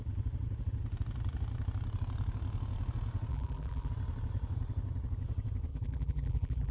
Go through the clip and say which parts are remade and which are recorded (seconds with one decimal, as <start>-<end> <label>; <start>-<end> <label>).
0.0-3.3 recorded; 3.3-3.9 remade; 3.9-5.7 recorded; 5.7-6.7 remade